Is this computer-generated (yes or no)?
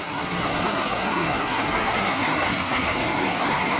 yes